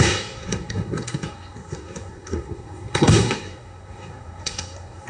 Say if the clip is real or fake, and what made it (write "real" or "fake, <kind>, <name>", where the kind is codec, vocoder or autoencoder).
fake, codec, SNAC